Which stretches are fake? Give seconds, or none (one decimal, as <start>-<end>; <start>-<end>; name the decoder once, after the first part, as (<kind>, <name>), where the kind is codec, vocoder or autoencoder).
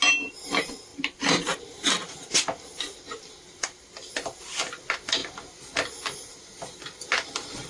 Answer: none